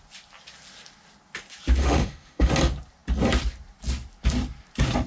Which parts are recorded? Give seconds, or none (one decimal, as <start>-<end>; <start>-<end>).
0.0-1.8; 2.5-5.1